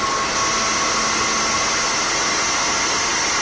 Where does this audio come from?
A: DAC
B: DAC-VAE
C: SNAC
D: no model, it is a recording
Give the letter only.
D